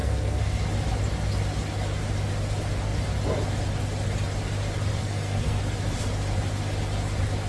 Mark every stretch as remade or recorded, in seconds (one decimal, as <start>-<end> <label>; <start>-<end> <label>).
0.0-0.6 remade; 0.6-4.9 recorded; 4.9-5.6 remade; 5.6-7.5 recorded